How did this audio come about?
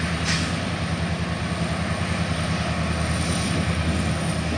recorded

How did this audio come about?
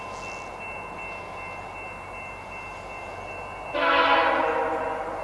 recorded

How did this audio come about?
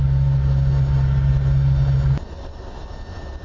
recorded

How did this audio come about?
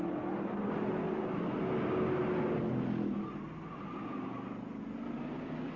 recorded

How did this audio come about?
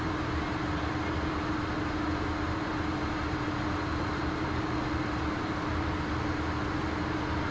recorded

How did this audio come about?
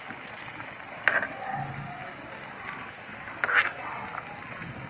recorded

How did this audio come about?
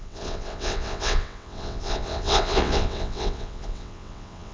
remade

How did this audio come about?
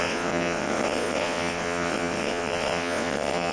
remade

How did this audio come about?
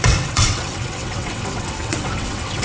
remade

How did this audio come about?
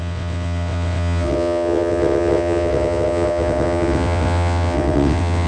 remade